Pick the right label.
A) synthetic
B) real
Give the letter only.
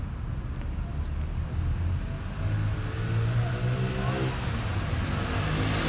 B